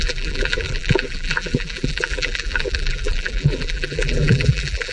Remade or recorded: remade